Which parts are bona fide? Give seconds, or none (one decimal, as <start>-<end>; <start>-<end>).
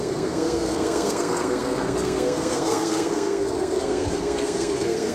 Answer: none